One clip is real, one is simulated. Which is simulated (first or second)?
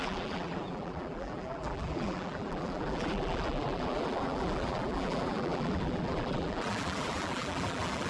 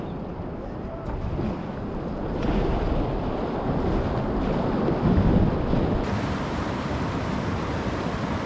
first